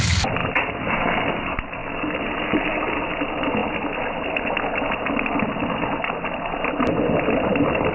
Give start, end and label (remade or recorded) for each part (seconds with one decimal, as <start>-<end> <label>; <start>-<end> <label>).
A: 0.0-7.9 recorded